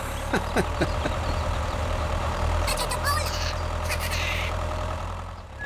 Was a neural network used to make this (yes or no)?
yes